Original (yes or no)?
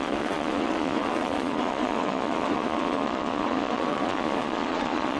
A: no